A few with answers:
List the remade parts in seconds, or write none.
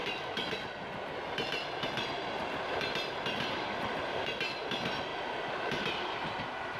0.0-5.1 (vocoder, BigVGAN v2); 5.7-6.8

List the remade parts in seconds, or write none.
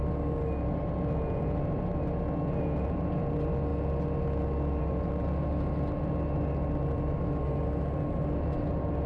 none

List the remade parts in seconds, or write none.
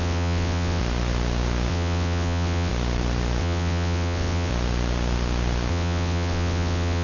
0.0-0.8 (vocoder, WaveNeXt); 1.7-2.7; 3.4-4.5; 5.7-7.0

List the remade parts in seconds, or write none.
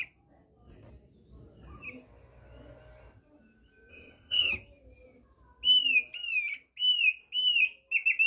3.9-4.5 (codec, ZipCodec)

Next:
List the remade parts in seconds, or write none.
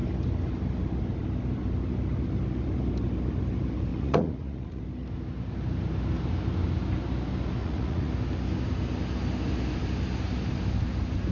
3.9-4.8 (vocoder, Vocos); 7.6-8.1